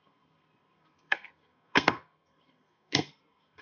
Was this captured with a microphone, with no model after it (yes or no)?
no